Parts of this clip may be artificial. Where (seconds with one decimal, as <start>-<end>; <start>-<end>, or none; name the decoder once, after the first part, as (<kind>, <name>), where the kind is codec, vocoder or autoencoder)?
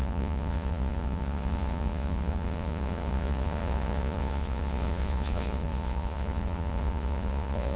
0.0-7.8 (vocoder, Vocos)